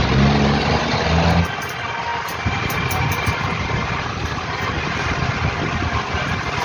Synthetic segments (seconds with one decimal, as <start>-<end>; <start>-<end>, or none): 2.1-4.3